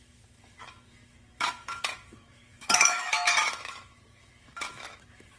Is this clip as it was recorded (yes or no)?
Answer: no